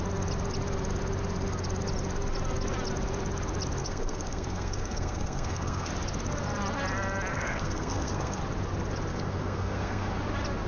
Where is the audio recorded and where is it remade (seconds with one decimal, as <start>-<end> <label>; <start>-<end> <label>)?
0.0-3.8 recorded; 3.8-5.9 remade; 5.9-7.3 recorded; 7.3-8.4 remade; 8.4-9.1 recorded; 9.1-10.1 remade; 10.1-10.7 recorded